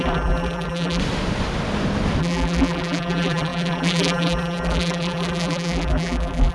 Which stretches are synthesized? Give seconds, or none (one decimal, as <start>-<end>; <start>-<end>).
0.0-1.0; 2.2-6.5